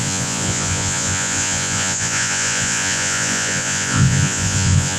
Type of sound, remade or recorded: remade